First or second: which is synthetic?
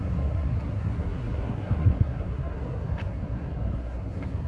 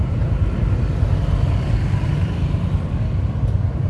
first